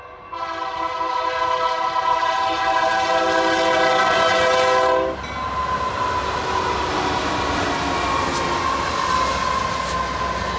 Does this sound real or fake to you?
real